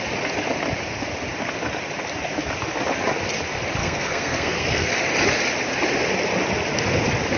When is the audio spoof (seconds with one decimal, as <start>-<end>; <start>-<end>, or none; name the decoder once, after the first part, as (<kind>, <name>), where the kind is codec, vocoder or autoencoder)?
3.8-4.9 (codec, SNAC)